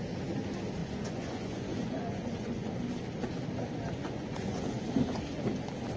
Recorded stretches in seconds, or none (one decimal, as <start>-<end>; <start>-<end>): 0.0-0.8; 2.7-4.0; 4.6-6.0